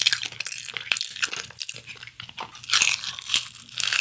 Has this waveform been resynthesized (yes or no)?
no